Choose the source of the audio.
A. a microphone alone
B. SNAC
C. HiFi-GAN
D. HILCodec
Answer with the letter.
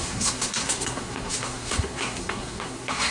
B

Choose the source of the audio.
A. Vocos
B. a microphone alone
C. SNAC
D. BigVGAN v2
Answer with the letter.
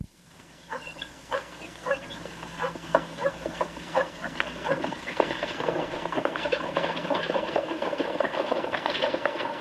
C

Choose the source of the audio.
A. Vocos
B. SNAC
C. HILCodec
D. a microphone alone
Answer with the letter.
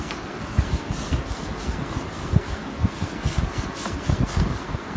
B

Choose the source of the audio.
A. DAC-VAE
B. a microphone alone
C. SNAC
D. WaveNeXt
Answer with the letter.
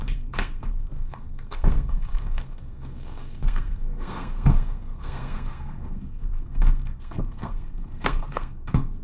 C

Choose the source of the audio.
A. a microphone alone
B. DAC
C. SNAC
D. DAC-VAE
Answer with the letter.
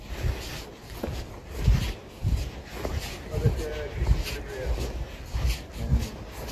A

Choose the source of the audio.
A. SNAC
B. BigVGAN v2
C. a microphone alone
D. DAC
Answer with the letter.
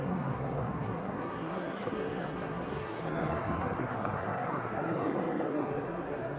A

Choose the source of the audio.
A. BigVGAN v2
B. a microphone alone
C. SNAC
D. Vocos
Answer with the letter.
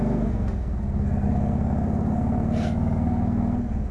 C